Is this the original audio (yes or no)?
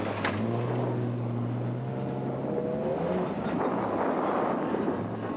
yes